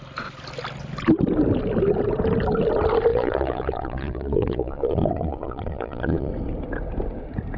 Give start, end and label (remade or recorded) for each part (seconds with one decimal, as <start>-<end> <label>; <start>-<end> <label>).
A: 0.0-3.1 recorded; 3.1-6.3 remade; 6.3-7.6 recorded

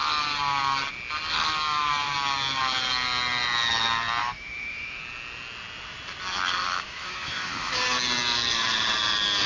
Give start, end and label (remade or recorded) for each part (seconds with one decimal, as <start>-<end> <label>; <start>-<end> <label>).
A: 0.0-4.2 recorded; 4.2-5.0 remade; 5.0-6.6 recorded; 6.6-7.8 remade; 7.8-9.5 recorded